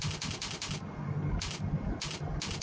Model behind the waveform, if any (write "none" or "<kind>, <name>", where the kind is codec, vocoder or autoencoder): none